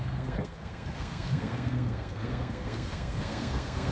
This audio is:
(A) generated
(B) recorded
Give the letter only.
A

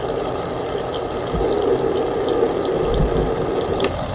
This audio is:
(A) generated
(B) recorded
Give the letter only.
B